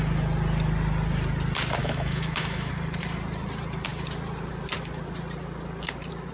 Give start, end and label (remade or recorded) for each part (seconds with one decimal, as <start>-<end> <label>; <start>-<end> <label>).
0.0-1.8 recorded; 1.8-2.7 remade; 2.7-6.3 recorded